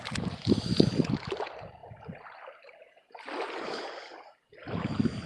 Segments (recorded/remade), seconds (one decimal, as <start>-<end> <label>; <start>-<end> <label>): 0.0-5.3 recorded